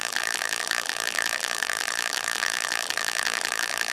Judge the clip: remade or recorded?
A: remade